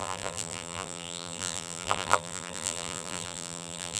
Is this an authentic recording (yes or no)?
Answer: no